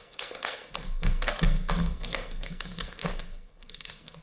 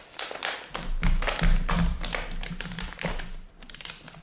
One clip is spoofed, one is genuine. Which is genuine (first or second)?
second